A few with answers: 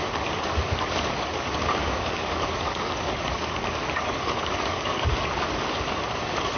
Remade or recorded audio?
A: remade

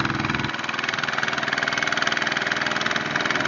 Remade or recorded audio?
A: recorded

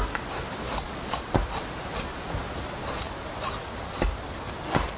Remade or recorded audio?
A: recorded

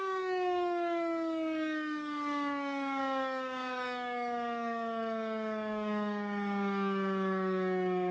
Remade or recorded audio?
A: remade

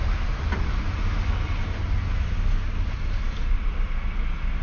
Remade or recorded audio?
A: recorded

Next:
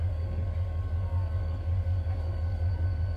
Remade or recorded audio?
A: remade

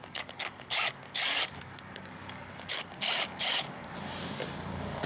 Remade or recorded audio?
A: remade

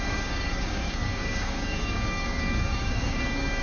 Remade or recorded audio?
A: remade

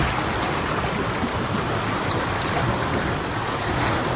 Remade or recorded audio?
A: recorded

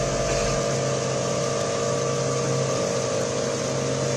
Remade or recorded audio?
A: recorded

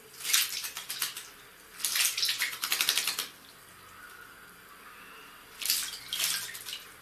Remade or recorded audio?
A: recorded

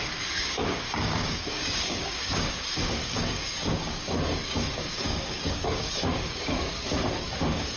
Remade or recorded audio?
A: remade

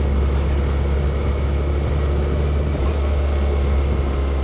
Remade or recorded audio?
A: recorded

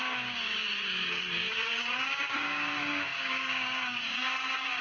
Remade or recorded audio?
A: remade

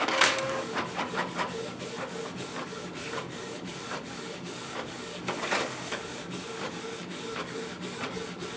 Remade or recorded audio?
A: remade